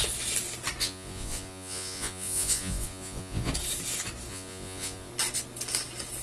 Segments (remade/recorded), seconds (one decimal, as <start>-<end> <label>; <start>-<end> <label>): 0.0-0.8 recorded; 0.8-3.5 remade; 3.5-4.3 recorded; 4.3-5.1 remade; 5.1-6.2 recorded